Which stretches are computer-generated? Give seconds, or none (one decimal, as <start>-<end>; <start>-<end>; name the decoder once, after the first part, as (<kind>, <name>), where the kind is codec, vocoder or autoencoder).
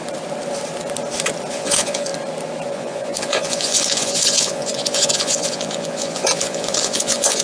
1.5-2.1 (vocoder, Vocos); 2.7-7.4